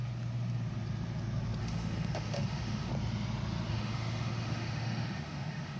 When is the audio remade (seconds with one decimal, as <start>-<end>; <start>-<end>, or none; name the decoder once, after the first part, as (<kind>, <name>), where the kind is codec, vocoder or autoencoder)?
1.6-2.9 (autoencoder, DAC-VAE); 3.7-5.8